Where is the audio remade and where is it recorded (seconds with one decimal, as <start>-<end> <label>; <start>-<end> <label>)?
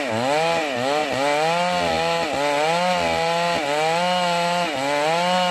0.0-5.5 recorded